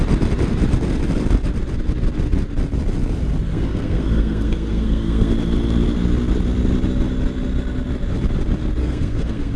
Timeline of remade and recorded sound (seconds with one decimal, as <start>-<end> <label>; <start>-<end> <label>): 0.0-3.5 recorded; 3.5-5.3 remade; 5.3-8.8 recorded; 8.8-9.6 remade